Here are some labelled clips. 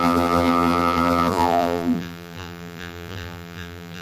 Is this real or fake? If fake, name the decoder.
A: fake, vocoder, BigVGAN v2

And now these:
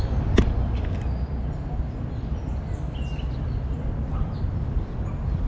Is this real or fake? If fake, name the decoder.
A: real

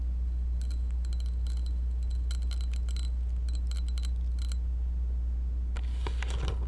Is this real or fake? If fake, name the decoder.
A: real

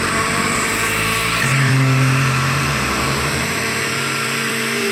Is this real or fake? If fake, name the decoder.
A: fake, vocoder, BigVGAN v2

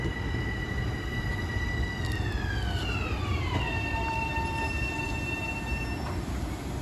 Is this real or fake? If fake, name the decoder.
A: real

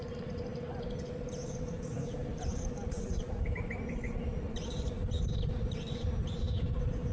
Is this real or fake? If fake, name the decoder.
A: fake, vocoder, BigVGAN v2